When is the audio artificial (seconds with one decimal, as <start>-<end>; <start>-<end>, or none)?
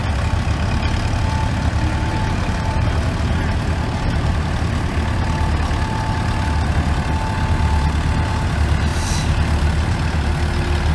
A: none